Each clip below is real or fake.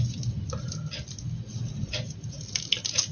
real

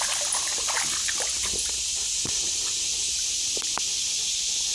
real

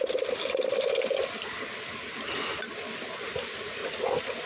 real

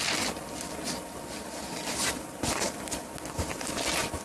real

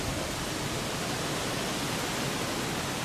real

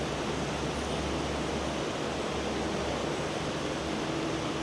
real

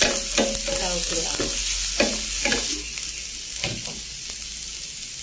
real